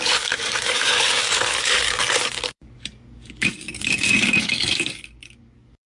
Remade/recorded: remade